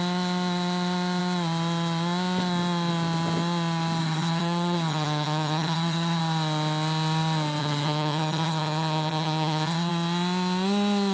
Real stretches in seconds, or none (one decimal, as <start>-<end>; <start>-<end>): 0.0-4.0; 6.2-7.6; 9.9-11.1